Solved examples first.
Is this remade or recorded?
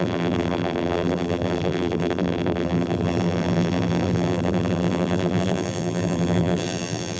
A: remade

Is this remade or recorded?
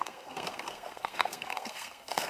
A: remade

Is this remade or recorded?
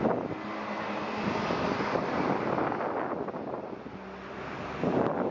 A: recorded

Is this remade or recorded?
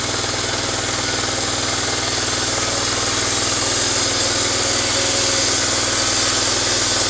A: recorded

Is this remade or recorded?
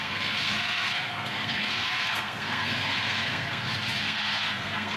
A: remade